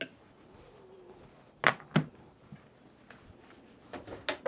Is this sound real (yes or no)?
yes